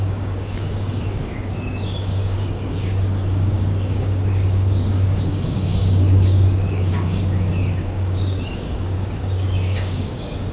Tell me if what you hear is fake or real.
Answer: fake